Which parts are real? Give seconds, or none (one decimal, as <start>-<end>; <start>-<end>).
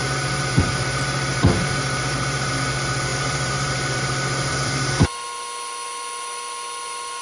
2.5-3.1; 4.9-7.2